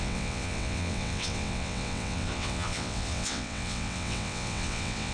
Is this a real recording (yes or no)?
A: no